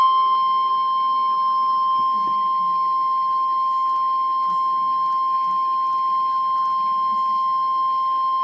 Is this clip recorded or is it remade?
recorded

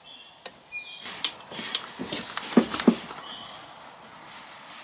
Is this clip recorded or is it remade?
recorded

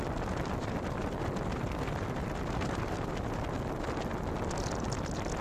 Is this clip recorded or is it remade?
recorded